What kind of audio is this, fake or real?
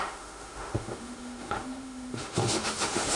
fake